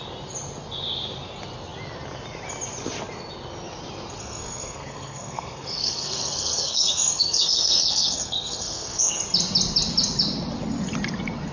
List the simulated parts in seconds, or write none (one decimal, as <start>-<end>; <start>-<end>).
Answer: 4.2-9.2